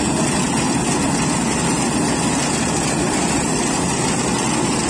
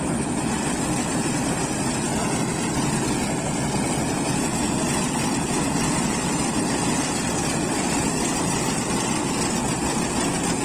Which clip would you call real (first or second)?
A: first